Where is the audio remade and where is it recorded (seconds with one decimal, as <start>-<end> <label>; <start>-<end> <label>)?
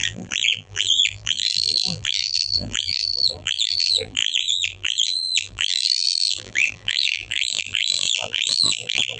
0.0-9.2 remade